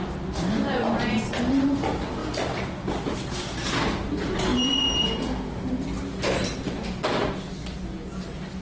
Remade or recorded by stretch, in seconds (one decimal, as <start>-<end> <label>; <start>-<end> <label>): 0.0-8.6 recorded